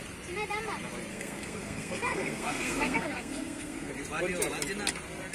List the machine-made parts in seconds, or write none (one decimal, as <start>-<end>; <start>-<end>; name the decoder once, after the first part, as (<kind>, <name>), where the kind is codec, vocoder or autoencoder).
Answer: 1.1-3.9 (codec, SNAC)